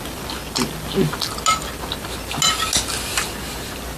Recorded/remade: recorded